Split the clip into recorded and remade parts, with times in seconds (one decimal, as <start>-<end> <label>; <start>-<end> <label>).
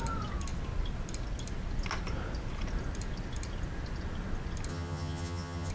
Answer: 0.0-4.7 recorded; 4.7-5.7 remade